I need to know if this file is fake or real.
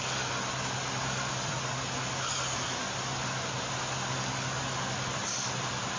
real